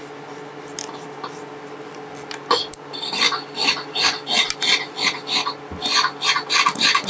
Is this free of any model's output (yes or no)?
yes